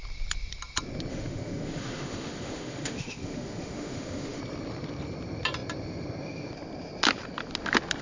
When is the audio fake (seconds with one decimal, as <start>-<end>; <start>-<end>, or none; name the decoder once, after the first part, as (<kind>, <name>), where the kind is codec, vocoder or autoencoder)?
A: 1.1-4.4 (autoencoder, DAC-VAE)